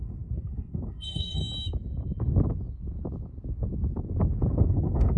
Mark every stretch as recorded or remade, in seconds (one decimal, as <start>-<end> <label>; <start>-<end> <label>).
0.0-1.4 remade; 1.4-4.5 recorded; 4.5-5.2 remade

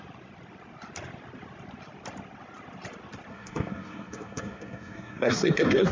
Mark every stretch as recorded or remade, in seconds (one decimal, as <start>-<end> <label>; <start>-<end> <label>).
0.0-3.3 recorded; 3.3-5.9 remade

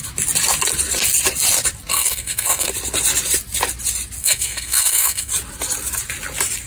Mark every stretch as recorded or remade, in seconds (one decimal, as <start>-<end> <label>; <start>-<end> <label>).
0.0-1.9 recorded; 1.9-2.7 remade; 2.7-4.2 recorded; 4.2-5.3 remade; 5.3-6.7 recorded

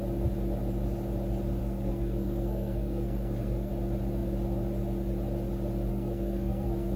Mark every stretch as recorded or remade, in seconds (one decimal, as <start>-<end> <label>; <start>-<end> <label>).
0.0-1.6 recorded; 1.6-3.7 remade; 3.7-5.9 recorded; 5.9-7.0 remade

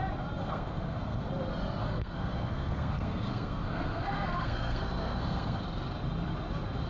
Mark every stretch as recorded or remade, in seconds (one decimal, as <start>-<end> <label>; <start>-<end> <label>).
0.0-0.4 recorded; 0.4-1.3 remade; 1.3-1.8 recorded; 1.8-5.6 remade; 5.6-6.9 recorded